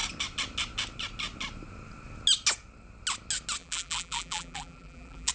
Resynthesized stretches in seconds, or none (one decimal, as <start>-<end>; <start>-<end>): 3.6-5.3